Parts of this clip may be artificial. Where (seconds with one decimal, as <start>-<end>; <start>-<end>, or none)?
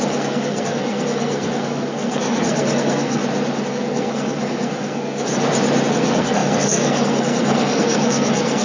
0.0-3.2; 3.7-5.3; 5.9-8.6